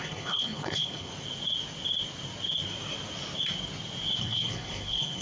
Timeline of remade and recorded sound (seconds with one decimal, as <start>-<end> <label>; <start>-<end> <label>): 0.0-1.1 remade; 1.1-4.2 recorded; 4.2-5.2 remade